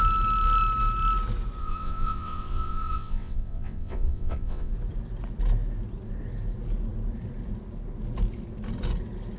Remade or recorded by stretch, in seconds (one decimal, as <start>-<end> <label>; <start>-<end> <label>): 0.0-1.6 recorded; 1.6-4.7 remade; 4.7-9.4 recorded